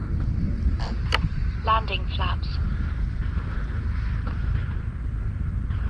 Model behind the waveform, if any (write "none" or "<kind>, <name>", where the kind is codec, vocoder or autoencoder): none